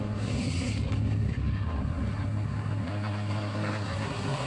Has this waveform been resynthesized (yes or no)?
yes